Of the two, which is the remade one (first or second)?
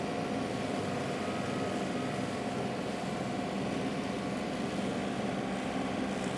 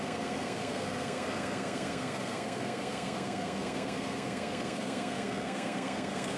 second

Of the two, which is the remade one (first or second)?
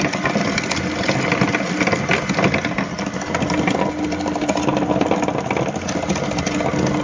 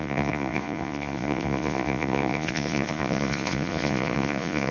second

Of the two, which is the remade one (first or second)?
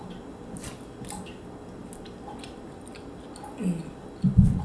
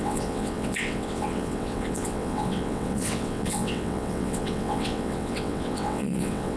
second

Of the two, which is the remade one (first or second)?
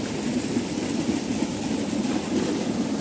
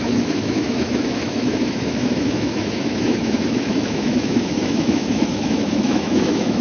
second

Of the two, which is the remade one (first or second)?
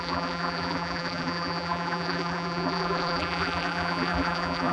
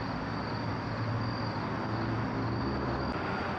first